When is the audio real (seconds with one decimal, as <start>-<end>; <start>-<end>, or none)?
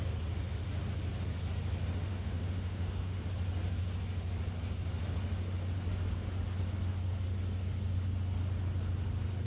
0.0-2.1; 3.2-9.5